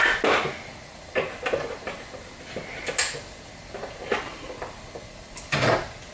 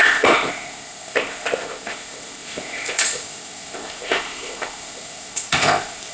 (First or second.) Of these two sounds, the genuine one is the first